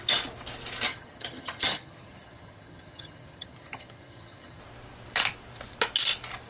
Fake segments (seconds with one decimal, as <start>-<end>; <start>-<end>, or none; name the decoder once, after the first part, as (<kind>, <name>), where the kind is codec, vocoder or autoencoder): 0.9-4.6 (vocoder, HiFi-GAN)